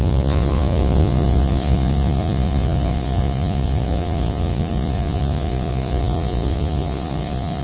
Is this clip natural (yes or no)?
no